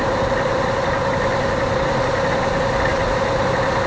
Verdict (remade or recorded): recorded